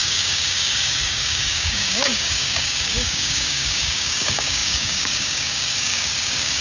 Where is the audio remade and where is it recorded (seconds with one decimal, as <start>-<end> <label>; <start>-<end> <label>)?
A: 0.0-6.6 remade